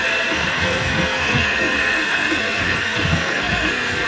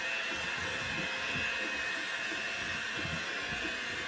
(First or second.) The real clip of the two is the second